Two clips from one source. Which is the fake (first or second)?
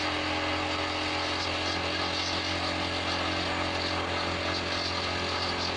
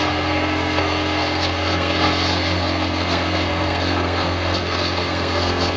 second